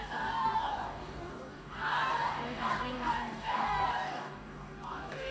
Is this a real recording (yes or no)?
no